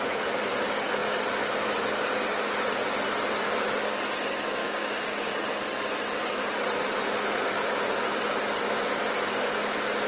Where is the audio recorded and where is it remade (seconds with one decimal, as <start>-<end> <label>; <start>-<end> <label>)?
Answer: 0.0-4.6 recorded; 4.6-5.3 remade; 5.3-10.1 recorded